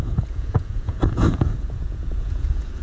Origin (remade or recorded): remade